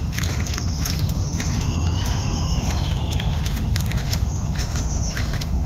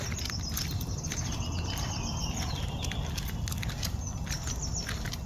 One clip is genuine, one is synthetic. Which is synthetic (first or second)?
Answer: first